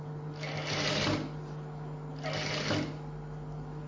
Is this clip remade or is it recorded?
recorded